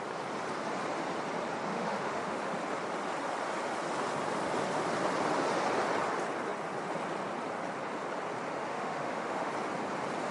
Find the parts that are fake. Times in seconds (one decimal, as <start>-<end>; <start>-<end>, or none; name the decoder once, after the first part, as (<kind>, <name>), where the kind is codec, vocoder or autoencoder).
1.7-2.4 (autoencoder, DAC-VAE); 8.7-9.5